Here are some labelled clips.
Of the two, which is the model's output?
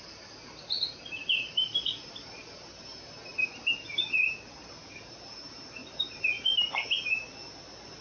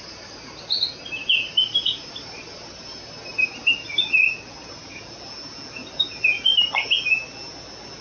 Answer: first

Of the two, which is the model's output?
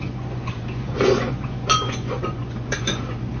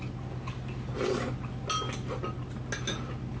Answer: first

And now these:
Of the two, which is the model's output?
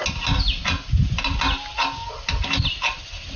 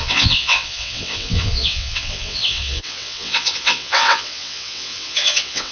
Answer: second